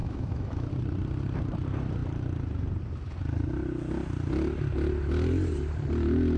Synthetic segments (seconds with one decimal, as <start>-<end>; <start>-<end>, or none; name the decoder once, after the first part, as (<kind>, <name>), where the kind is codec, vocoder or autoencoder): 0.0-0.7 (autoencoder, DAC-VAE)